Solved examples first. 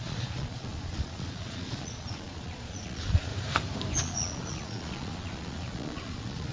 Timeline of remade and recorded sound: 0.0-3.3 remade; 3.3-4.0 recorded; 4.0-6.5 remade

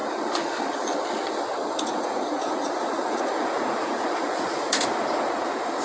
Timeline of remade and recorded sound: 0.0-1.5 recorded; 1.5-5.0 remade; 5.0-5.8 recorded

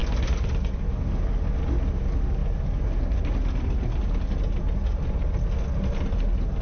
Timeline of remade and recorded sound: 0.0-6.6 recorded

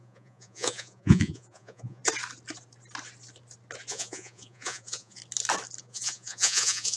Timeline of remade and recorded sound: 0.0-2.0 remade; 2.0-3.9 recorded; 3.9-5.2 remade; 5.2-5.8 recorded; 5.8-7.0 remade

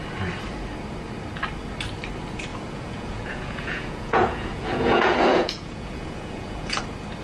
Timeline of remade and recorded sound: 0.0-2.5 recorded; 2.5-6.8 remade; 6.8-7.2 recorded